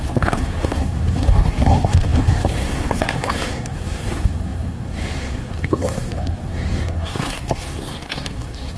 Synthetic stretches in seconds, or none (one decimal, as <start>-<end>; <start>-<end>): 0.0-8.8